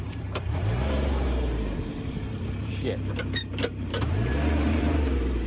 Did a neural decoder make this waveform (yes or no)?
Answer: yes